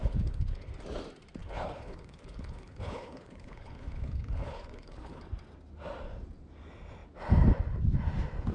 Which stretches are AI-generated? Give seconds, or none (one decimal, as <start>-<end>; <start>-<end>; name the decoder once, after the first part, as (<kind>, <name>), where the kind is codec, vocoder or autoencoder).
0.0-0.7 (codec, HILCodec); 1.4-5.2